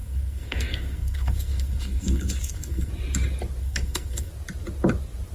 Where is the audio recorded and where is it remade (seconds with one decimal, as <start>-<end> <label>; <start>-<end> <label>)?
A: 0.0-2.9 remade; 2.9-3.6 recorded; 3.6-4.3 remade; 4.3-5.3 recorded